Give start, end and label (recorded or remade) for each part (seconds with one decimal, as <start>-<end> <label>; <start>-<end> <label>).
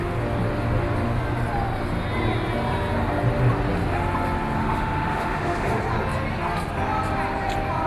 0.0-4.6 recorded; 4.6-5.8 remade; 5.8-7.9 recorded